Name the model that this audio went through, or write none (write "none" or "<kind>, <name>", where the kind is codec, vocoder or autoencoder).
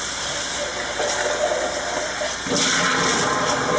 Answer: none